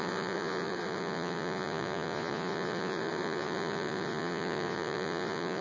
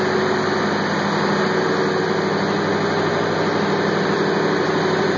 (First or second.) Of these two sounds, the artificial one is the first